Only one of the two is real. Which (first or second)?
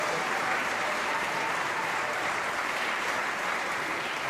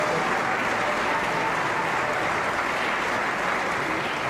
second